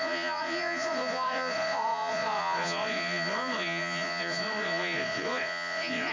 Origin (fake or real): fake